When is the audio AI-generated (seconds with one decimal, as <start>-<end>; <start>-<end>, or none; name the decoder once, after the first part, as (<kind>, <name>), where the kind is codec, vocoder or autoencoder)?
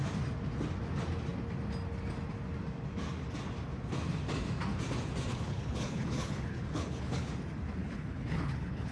5.3-7.3 (codec, HILCodec); 7.8-8.9